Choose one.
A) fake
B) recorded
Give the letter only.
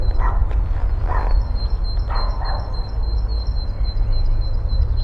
B